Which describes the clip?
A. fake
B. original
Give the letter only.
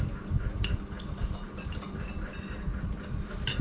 B